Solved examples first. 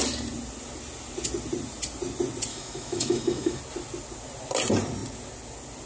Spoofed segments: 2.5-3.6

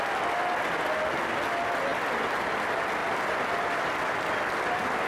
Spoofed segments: none

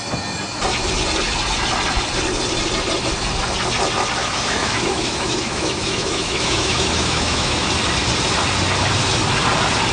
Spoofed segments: 4.2-7.7